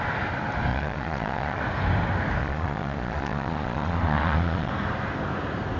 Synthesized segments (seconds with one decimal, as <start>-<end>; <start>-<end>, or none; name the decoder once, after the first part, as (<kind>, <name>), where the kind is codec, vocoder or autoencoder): 0.7-1.6 (vocoder, Vocos); 2.4-4.7